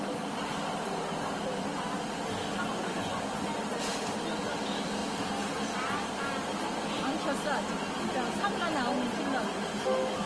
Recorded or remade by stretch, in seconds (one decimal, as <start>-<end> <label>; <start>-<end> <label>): 0.0-2.7 recorded; 2.7-3.3 remade; 3.3-10.3 recorded